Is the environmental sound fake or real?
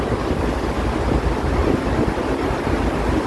real